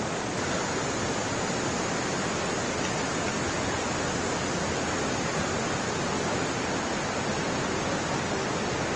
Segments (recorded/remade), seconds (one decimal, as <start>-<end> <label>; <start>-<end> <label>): 0.0-9.0 recorded